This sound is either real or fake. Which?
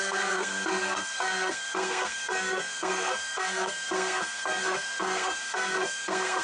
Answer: fake